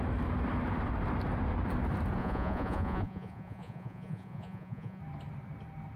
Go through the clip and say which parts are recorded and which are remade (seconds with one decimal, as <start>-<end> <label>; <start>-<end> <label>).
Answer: 0.0-2.2 recorded; 2.2-5.0 remade; 5.0-6.0 recorded